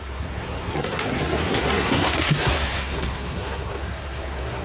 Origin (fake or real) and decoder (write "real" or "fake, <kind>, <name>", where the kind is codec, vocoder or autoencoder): fake, codec, SNAC